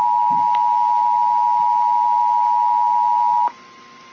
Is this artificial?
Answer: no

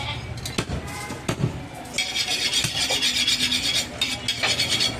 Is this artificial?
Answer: no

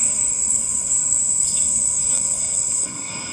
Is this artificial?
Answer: yes